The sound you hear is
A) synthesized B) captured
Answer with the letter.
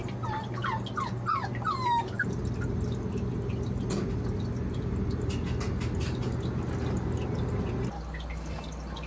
B